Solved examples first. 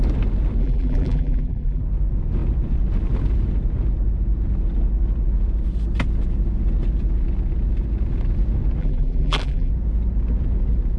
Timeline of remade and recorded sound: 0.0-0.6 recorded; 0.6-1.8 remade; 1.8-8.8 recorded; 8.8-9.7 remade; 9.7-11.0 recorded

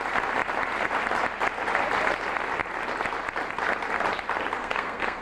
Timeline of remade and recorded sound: 0.0-4.6 recorded; 4.6-5.2 remade